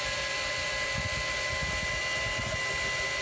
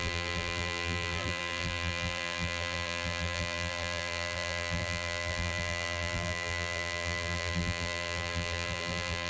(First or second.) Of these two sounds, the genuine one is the first